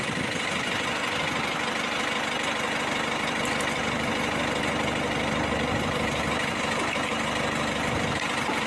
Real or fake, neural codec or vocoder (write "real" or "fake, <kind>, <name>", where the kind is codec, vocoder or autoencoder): real